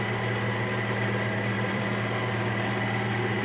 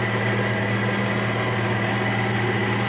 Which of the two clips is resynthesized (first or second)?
first